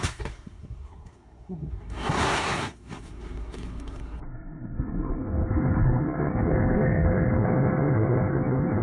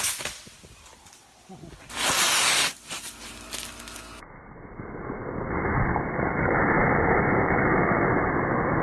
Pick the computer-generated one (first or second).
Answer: first